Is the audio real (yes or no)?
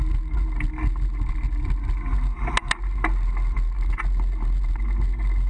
yes